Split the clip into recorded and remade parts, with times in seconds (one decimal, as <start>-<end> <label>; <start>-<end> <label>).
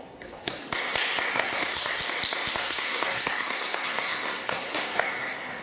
0.0-0.6 remade; 0.6-1.3 recorded; 1.3-2.0 remade; 2.0-2.6 recorded; 2.6-5.6 remade